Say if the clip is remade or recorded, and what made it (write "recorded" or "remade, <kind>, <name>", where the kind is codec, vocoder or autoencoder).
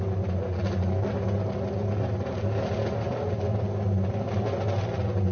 recorded